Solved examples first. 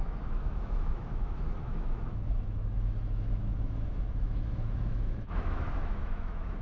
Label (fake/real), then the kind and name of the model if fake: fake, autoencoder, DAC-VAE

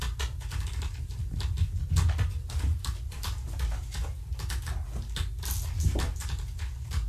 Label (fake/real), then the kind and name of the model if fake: real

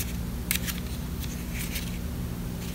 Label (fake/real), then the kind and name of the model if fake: real